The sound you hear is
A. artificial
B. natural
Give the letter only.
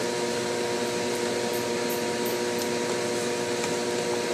B